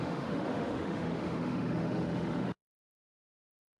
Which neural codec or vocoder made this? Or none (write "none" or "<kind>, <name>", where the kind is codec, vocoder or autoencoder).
autoencoder, DAC-VAE